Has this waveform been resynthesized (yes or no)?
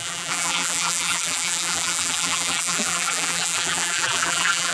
yes